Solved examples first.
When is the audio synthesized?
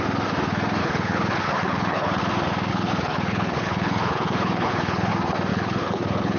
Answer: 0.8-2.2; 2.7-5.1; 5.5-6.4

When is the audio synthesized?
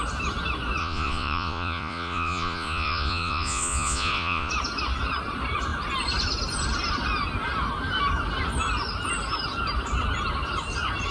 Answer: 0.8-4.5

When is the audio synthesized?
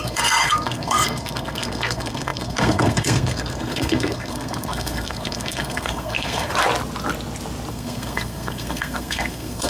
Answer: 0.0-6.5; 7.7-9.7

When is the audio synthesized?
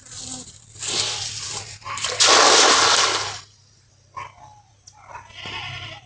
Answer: none